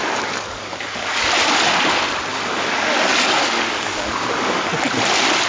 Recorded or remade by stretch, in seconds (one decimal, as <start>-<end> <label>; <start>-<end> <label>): 0.0-1.3 remade; 1.3-2.3 recorded; 2.3-4.7 remade; 4.7-5.5 recorded